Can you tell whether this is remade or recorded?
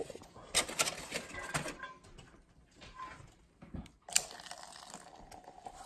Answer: recorded